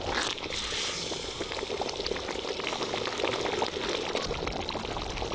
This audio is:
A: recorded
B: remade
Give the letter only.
A